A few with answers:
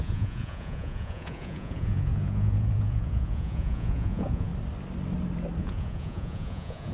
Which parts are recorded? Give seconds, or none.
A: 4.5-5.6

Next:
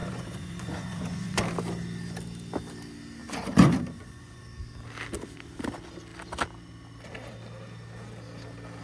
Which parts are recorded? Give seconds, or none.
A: 1.4-3.2; 4.4-8.8

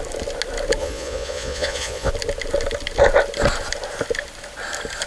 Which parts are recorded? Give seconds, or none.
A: 0.0-0.8; 2.1-5.1